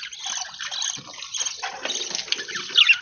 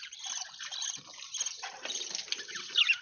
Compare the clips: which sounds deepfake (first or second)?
second